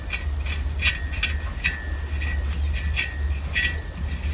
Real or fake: real